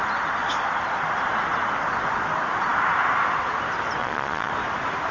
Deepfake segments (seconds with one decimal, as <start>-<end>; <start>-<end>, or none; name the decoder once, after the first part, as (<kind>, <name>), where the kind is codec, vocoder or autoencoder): 4.0-4.5 (vocoder, Vocos)